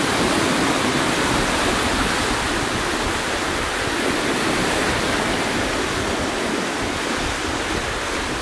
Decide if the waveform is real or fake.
real